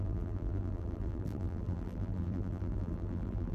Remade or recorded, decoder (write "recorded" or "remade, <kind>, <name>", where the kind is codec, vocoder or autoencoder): remade, vocoder, BigVGAN v2